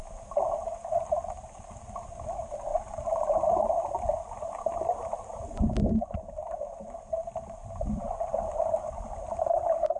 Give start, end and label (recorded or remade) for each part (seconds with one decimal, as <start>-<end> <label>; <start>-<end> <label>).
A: 0.0-10.0 recorded

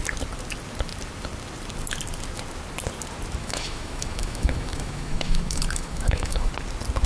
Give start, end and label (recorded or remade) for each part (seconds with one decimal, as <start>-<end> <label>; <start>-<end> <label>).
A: 0.0-3.4 recorded; 3.4-6.5 remade; 6.5-7.1 recorded

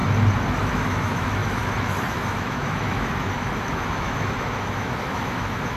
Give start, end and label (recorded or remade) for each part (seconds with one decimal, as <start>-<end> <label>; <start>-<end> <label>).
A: 0.0-0.7 recorded; 0.7-5.8 remade

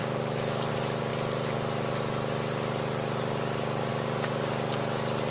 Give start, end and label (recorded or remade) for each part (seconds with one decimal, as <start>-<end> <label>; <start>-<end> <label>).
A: 0.0-0.7 remade; 0.7-5.3 recorded

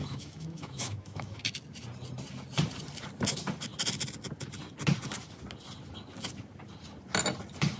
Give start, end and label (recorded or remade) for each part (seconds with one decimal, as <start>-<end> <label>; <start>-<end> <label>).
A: 0.0-1.4 remade; 1.4-7.8 recorded

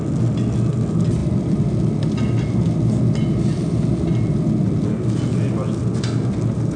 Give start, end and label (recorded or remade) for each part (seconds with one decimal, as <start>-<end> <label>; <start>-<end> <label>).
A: 0.0-6.8 recorded

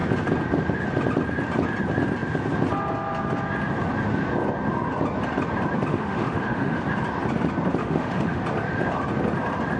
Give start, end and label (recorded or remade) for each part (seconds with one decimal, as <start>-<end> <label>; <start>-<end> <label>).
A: 0.0-5.9 recorded; 5.9-6.8 remade; 6.8-7.8 recorded; 7.8-8.4 remade; 8.4-9.8 recorded

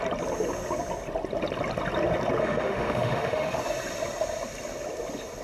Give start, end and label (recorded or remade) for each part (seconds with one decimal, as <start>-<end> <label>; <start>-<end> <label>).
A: 0.0-2.4 recorded; 2.4-3.6 remade; 3.6-5.4 recorded